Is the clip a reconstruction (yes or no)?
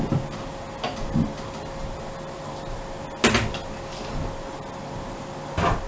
no